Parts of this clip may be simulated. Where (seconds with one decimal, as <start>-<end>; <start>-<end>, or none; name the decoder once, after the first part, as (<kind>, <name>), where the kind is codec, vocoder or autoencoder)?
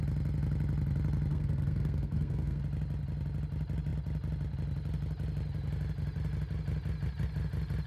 1.3-2.6 (codec, SNAC)